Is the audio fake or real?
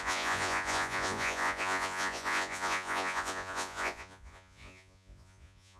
fake